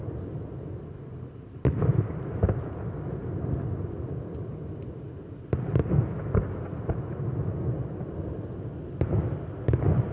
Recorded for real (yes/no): yes